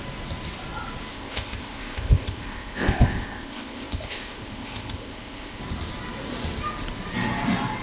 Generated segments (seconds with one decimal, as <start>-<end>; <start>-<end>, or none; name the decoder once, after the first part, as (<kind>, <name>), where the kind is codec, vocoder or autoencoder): 1.1-5.6 (codec, ZipCodec)